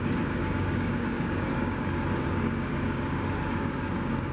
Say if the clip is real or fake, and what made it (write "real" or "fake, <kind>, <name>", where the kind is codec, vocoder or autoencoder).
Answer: fake, codec, DAC